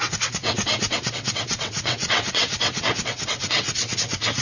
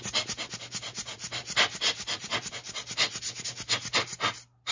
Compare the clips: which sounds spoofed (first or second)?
first